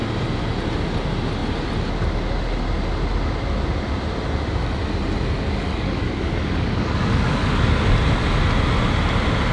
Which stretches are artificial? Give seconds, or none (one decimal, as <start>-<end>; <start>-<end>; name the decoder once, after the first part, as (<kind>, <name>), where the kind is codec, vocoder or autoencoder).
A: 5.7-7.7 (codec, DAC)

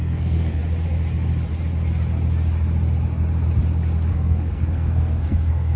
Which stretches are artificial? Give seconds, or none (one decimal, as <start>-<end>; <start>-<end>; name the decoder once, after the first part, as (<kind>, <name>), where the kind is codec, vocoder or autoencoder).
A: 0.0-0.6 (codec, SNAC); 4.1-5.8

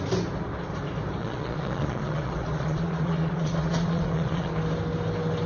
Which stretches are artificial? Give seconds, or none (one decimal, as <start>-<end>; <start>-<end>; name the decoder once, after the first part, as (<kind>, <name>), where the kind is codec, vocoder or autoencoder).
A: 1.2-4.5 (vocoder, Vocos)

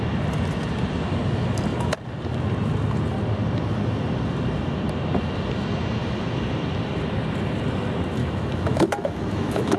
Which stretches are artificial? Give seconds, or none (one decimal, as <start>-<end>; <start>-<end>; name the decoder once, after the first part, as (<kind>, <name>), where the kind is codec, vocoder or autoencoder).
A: 8.2-9.8 (autoencoder, DAC-VAE)